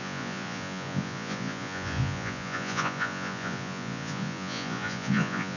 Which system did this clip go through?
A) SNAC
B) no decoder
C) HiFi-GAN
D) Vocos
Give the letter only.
D